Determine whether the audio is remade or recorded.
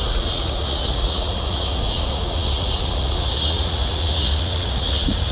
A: remade